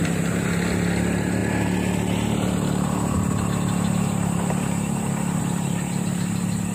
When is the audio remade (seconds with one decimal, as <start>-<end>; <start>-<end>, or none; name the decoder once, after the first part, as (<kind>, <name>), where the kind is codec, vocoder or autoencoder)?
none